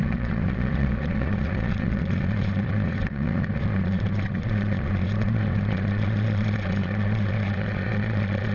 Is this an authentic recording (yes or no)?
no